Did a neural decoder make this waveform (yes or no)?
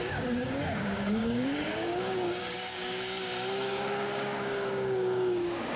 yes